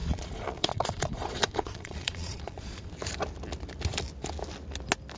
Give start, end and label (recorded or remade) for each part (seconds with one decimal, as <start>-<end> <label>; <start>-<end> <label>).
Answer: 0.0-2.9 remade; 2.9-5.2 recorded